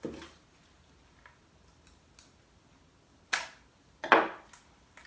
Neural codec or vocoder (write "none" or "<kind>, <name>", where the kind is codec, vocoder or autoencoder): none